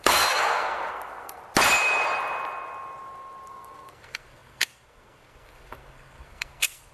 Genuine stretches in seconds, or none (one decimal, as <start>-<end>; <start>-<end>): 1.4-3.5